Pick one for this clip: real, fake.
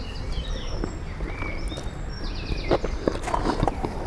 real